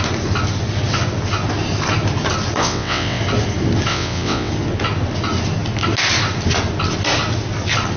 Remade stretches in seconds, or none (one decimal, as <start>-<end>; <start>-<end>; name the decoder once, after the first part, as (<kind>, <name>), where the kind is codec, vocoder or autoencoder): 2.6-3.2 (vocoder, WaveNeXt); 3.9-4.5